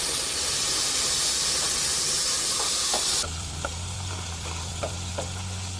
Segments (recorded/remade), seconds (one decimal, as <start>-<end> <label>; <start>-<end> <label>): 0.0-1.9 recorded; 1.9-5.1 remade; 5.1-5.8 recorded